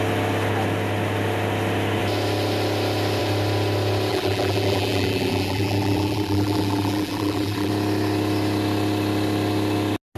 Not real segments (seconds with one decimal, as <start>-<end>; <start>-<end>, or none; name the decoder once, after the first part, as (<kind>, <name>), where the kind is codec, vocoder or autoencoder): 4.1-7.7 (vocoder, BigVGAN v2)